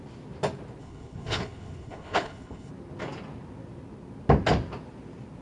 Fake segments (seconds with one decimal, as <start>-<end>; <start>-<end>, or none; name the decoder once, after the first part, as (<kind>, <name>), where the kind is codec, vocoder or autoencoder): 0.8-2.7 (codec, HILCodec)